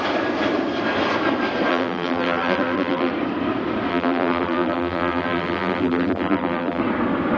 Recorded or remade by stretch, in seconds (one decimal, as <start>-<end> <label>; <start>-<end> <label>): 0.0-1.7 recorded; 1.7-3.1 remade; 3.1-3.9 recorded; 3.9-6.8 remade; 6.8-7.4 recorded